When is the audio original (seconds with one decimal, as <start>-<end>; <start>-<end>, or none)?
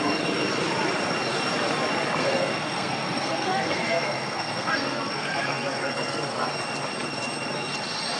0.0-2.2; 6.5-8.2